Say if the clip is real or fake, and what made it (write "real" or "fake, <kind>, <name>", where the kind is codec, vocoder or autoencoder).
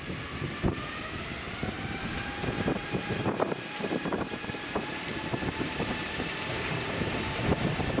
fake, vocoder, BigVGAN v2